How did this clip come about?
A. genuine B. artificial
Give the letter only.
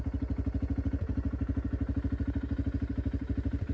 A